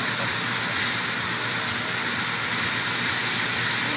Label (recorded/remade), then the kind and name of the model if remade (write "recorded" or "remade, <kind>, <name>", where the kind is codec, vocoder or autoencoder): recorded